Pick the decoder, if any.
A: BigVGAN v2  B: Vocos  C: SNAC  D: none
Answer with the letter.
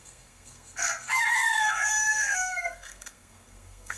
C